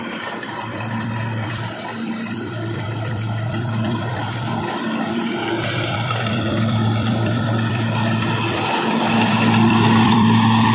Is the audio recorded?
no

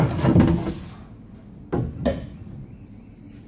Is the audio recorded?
yes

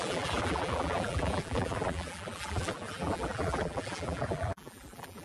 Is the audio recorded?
no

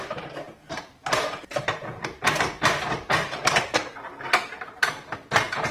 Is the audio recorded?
no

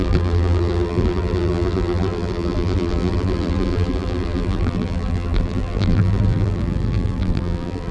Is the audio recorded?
no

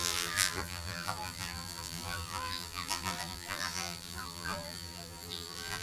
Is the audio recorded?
no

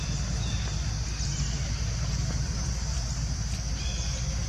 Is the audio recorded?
yes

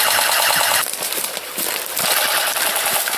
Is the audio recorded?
no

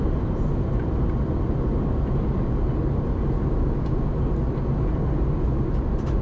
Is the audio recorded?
yes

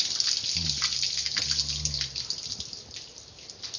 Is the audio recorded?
yes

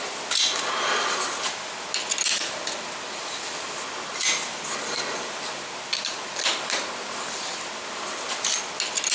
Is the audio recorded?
yes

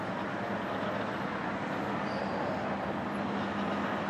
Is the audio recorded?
yes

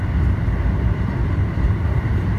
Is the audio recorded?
no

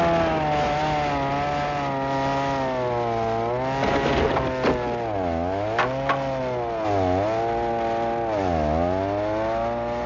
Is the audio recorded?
yes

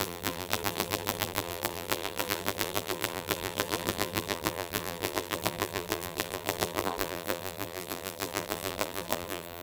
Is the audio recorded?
no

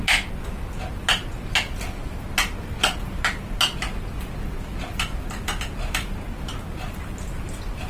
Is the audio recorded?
yes